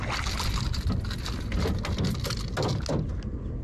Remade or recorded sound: recorded